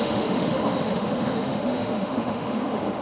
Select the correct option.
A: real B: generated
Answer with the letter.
B